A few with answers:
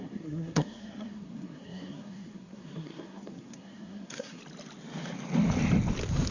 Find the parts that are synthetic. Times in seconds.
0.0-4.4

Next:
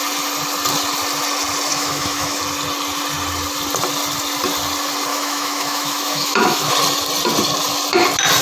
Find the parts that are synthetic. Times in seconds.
1.7-2.4; 5.1-6.7

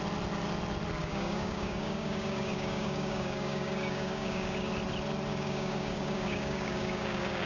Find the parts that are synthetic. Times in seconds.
1.0-4.7; 5.3-7.5

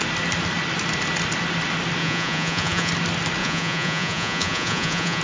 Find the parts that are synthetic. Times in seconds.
2.0-2.9; 3.4-5.2

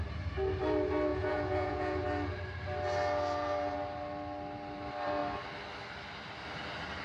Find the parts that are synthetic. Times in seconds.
1.1-2.0

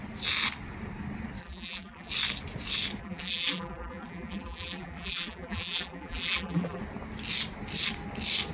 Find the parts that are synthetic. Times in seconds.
1.4-2.1; 3.0-6.8

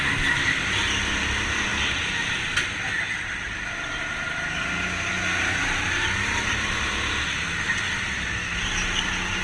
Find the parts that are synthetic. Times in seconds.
none

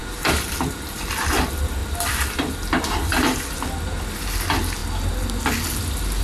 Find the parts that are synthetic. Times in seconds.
0.5-4.8; 5.5-6.2